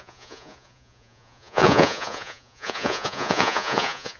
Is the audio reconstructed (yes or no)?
yes